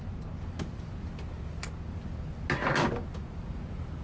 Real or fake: real